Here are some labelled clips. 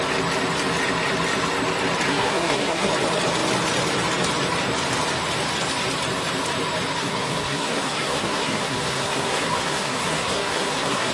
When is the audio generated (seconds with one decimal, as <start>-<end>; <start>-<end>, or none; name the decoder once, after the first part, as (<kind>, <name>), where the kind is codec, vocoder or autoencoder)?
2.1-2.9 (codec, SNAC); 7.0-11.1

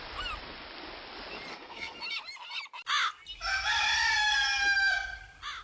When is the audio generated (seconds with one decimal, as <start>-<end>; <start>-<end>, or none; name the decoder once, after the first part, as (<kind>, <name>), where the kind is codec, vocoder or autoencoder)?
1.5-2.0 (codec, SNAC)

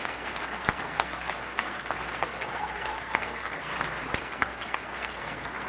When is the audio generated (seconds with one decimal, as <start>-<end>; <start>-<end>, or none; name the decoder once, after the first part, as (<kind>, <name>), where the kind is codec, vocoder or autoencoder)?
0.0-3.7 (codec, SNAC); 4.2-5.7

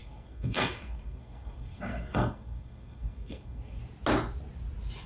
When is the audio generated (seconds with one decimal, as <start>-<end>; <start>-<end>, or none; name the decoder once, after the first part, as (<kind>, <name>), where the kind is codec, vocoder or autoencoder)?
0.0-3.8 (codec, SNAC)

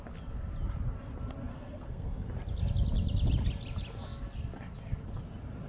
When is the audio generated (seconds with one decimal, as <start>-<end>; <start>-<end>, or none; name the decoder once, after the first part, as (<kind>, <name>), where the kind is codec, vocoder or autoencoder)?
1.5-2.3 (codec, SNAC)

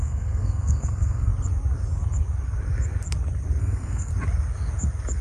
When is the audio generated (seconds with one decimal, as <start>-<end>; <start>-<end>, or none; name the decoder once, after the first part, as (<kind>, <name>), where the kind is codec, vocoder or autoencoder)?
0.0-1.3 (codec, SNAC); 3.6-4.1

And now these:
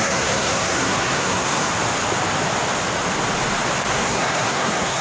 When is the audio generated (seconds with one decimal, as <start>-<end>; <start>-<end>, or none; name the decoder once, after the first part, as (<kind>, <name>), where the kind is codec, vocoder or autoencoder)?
0.0-1.7 (codec, SNAC); 3.9-5.0

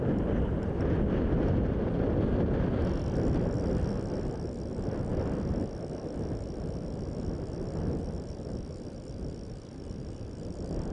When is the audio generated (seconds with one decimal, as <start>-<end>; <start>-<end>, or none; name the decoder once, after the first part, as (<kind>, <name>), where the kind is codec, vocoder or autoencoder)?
none